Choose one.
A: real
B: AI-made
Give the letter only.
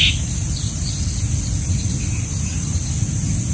A